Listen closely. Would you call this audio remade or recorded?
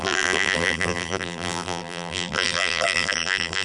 remade